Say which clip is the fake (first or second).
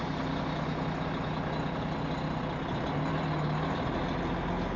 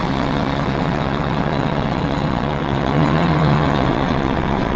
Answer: second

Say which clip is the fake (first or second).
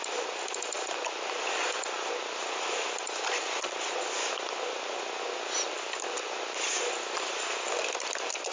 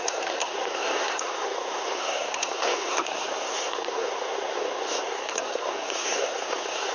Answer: second